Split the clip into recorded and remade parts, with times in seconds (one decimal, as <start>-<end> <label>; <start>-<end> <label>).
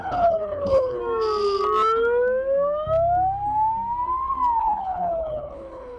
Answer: 0.0-1.0 remade; 1.0-4.6 recorded; 4.6-6.0 remade